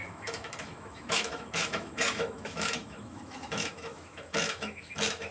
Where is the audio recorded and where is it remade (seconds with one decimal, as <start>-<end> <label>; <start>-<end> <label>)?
0.0-5.3 remade